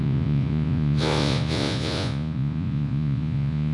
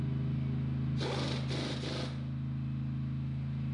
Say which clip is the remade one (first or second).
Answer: first